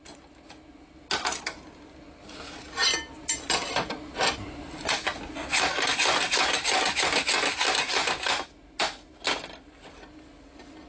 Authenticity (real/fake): real